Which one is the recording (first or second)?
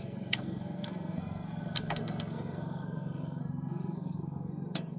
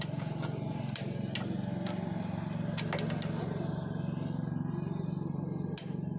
second